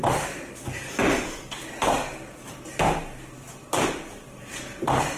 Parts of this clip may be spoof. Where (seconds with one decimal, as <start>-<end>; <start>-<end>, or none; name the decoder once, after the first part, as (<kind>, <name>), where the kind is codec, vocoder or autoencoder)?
1.0-2.0 (vocoder, BigVGAN v2); 3.6-5.2